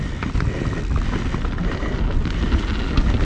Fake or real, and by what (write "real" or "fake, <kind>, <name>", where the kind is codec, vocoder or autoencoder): real